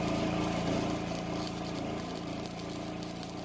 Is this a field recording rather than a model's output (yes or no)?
yes